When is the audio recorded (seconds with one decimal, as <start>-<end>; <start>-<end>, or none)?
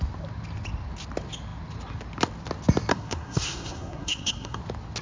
0.0-2.9; 4.6-5.0